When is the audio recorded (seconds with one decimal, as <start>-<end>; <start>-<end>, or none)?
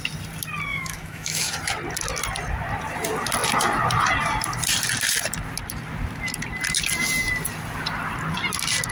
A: 0.0-0.7; 1.5-8.9